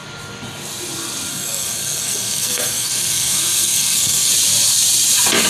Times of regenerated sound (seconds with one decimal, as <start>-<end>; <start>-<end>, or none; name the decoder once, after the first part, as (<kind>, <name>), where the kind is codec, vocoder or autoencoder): 1.3-4.3 (codec, SNAC)